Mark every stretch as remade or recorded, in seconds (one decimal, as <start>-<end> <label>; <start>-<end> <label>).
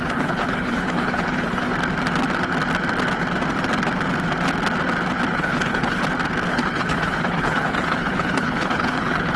0.0-1.7 remade; 1.7-5.3 recorded; 5.3-6.0 remade; 6.0-6.5 recorded; 6.5-9.4 remade